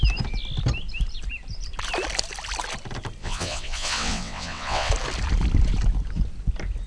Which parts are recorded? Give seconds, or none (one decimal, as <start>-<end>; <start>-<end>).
0.0-3.2; 4.9-6.9